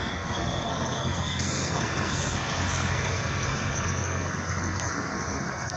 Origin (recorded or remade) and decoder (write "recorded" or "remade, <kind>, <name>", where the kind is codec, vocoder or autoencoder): remade, codec, SNAC